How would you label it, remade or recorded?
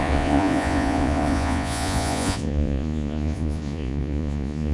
remade